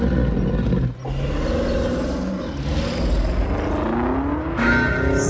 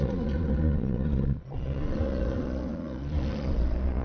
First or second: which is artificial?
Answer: second